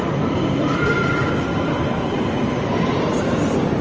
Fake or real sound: real